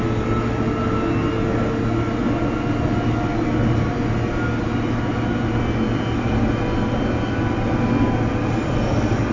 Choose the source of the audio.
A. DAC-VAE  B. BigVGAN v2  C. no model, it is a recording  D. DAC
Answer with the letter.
C